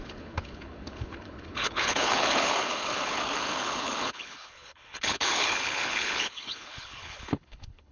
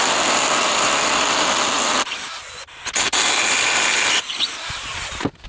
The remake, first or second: first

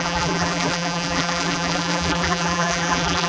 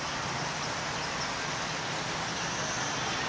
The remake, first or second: first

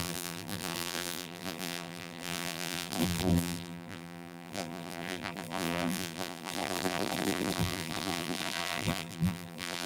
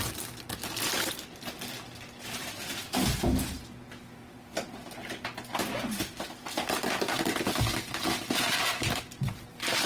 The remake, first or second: first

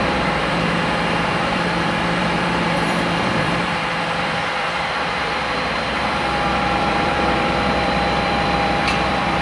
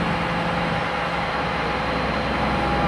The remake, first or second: first